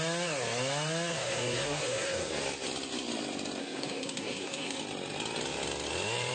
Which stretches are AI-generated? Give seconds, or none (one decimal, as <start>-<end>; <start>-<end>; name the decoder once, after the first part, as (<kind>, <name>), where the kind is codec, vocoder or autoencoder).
1.1-2.4 (codec, SNAC); 3.6-4.8